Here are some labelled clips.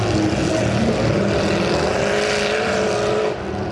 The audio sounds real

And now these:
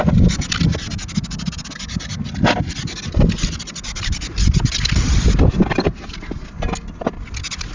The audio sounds real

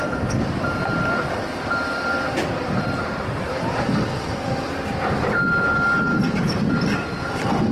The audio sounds fake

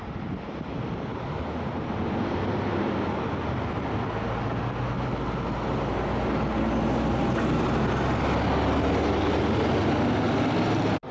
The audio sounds real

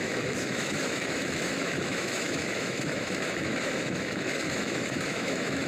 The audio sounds fake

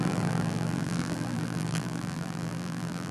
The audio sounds fake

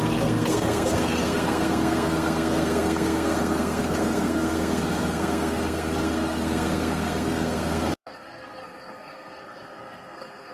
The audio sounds fake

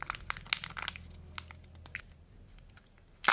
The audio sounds real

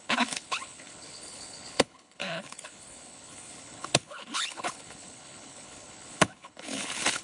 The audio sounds fake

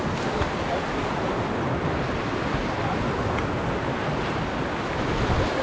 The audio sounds real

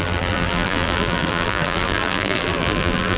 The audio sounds fake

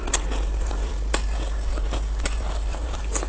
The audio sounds real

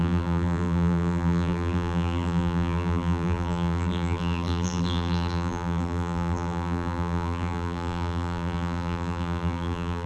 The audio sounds fake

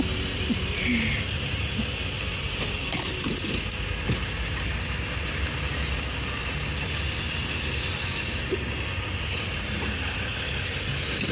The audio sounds real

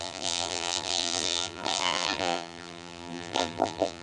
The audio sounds fake